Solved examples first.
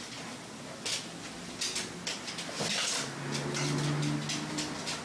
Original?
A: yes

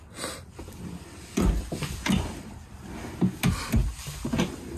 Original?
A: yes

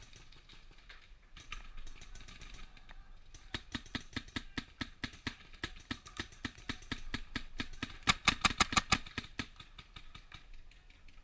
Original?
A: yes